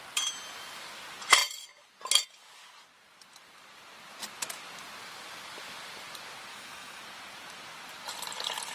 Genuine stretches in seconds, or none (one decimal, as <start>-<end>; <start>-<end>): 0.0-6.5; 7.0-8.7